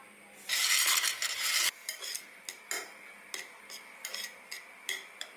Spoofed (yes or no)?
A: no